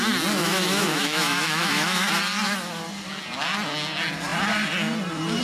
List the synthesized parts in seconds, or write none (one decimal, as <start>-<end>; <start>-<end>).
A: 0.4-2.1